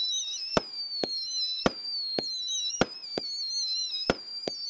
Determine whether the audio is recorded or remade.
recorded